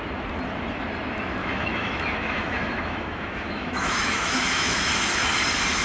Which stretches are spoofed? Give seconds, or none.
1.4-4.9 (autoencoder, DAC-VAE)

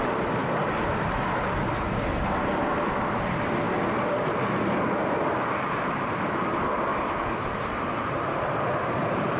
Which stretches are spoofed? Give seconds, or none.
6.9-9.4 (vocoder, BigVGAN v2)

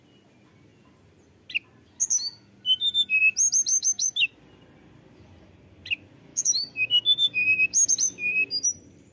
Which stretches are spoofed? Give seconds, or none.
3.7-4.3 (autoencoder, DAC-VAE); 6.3-7.9